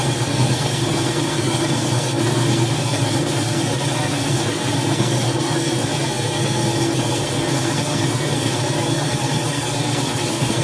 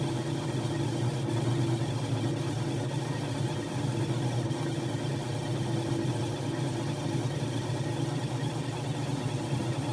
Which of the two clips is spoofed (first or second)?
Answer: first